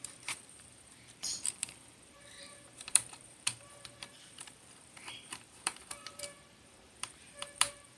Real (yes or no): no